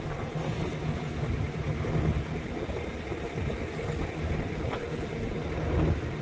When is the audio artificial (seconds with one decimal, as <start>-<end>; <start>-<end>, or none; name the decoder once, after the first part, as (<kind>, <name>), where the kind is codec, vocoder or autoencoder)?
none